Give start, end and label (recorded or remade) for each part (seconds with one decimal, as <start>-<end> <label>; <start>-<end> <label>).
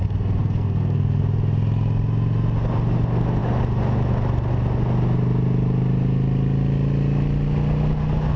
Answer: 0.0-0.4 recorded; 0.4-1.2 remade; 1.2-8.4 recorded